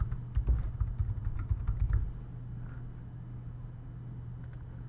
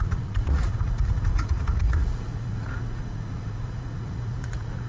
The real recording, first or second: first